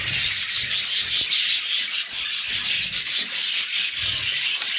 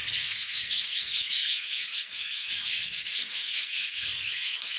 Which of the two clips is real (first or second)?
first